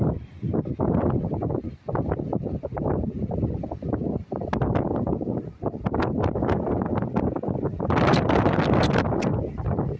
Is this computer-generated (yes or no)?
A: no